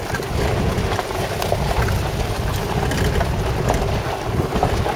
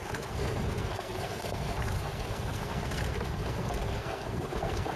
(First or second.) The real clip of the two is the first